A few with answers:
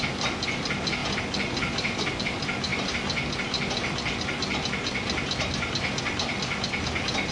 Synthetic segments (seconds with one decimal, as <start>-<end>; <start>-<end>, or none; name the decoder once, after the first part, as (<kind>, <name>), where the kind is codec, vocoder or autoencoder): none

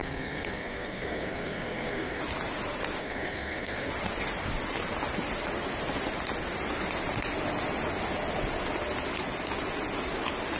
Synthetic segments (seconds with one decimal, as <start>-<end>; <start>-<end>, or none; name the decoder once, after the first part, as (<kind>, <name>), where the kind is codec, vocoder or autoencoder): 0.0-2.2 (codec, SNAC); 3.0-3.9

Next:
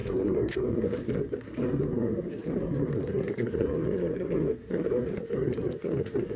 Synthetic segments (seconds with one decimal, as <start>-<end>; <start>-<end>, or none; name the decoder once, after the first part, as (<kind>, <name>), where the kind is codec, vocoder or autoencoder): 0.0-6.4 (codec, SNAC)

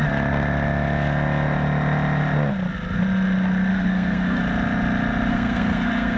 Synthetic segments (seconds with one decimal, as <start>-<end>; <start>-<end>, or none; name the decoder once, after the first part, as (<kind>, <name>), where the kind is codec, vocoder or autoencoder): 3.7-4.4 (codec, SNAC); 5.3-6.2